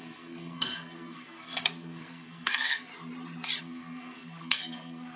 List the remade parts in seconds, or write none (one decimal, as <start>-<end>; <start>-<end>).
0.0-2.9; 3.6-5.2